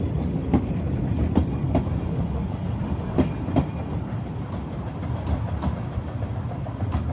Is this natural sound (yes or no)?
no